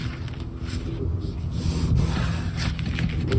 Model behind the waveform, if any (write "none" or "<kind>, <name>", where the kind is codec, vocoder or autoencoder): none